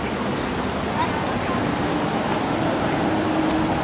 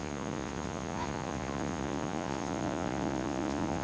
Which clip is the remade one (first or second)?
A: second